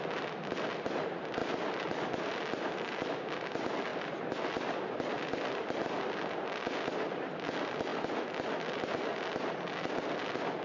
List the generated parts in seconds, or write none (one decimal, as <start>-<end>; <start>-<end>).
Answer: 1.4-3.1; 3.9-5.6